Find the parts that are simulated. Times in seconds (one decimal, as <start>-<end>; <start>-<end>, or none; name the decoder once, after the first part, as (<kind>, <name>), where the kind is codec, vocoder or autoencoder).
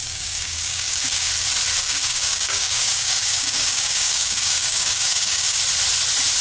0.0-1.3 (codec, DAC); 1.8-5.6